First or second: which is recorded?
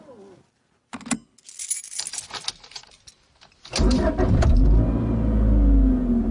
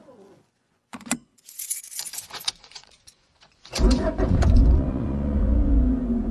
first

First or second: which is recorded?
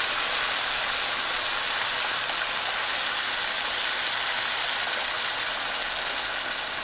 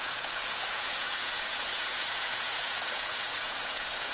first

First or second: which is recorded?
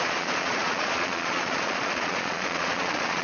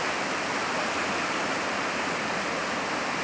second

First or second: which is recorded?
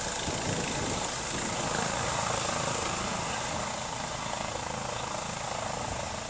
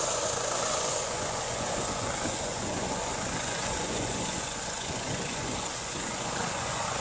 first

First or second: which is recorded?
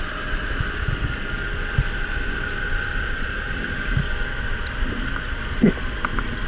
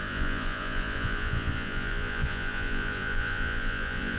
first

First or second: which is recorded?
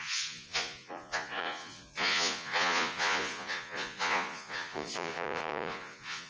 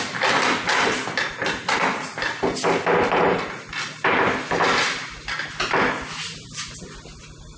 second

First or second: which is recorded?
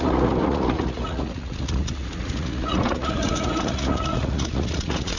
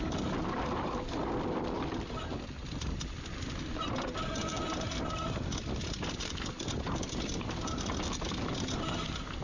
second